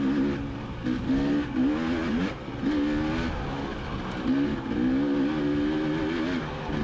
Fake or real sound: real